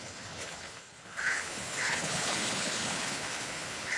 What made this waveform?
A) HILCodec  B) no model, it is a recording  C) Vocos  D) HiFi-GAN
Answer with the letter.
A